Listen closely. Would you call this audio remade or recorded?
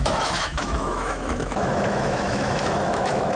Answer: remade